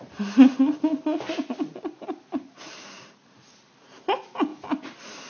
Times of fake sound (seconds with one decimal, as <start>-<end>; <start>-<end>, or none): none